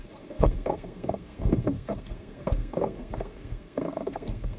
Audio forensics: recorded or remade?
remade